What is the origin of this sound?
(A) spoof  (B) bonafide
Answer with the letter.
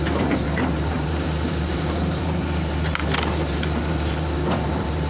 A